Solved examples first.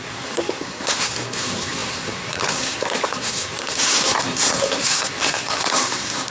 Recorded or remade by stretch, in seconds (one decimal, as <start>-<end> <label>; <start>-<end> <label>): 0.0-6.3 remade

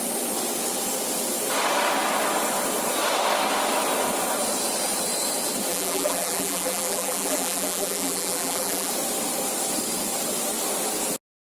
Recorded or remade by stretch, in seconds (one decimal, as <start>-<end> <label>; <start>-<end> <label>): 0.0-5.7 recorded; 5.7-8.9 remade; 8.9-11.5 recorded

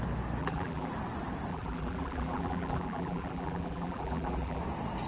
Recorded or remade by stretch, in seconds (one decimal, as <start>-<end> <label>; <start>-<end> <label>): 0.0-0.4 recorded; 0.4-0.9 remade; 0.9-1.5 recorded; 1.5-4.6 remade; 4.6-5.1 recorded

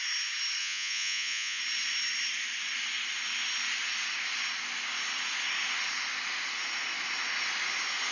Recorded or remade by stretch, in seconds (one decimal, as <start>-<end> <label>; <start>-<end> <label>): 0.0-0.6 recorded; 0.6-1.6 remade; 1.6-8.1 recorded

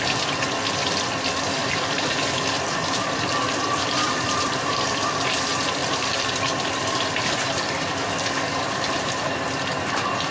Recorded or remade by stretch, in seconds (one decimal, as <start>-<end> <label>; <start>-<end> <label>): 0.0-1.6 recorded; 1.6-5.2 remade; 5.2-5.8 recorded; 5.8-9.9 remade; 9.9-10.3 recorded

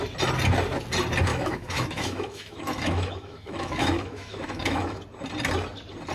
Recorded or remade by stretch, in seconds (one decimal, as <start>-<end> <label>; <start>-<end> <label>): 0.0-1.3 recorded; 1.3-5.0 remade; 5.0-6.1 recorded

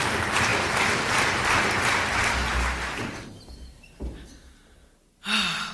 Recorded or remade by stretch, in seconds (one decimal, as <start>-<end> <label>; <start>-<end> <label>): 0.0-5.7 recorded

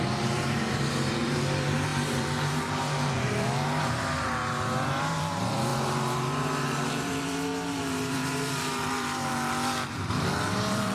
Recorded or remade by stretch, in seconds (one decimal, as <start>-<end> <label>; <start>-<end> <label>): 0.0-9.3 remade; 9.3-9.9 recorded; 9.9-10.9 remade